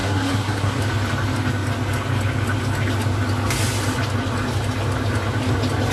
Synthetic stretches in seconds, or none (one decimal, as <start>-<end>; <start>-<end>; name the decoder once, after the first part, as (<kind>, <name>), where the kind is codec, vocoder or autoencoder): 0.0-0.8 (codec, SNAC)